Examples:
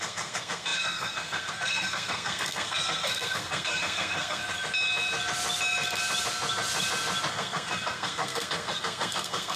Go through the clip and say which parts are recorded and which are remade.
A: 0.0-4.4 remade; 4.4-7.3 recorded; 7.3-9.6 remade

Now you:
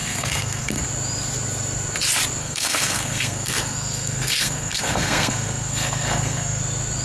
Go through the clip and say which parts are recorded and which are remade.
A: 0.0-0.8 remade; 0.8-2.4 recorded; 2.4-6.6 remade; 6.6-7.0 recorded